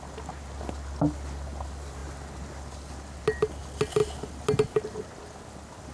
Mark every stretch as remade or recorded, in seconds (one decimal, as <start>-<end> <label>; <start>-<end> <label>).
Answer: 0.0-5.9 recorded